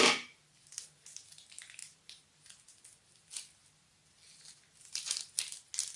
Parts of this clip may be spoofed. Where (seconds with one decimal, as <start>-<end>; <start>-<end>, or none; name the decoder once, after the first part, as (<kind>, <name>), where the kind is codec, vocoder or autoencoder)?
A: none